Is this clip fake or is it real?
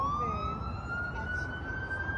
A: real